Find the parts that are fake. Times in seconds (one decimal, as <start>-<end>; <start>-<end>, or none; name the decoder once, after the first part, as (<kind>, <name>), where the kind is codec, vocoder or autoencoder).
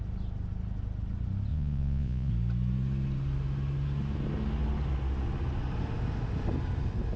1.5-2.3 (vocoder, Vocos)